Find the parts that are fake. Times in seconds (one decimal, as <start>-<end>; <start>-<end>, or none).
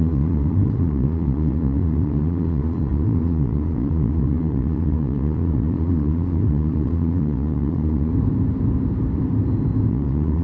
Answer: 0.0-8.1; 9.9-10.4